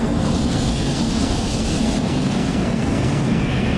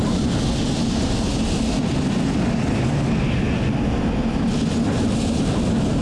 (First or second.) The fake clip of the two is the first